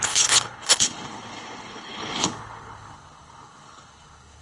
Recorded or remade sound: remade